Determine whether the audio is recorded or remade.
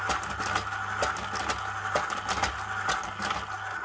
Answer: recorded